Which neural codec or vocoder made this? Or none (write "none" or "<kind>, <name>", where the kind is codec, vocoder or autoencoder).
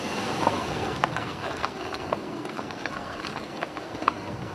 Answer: codec, SNAC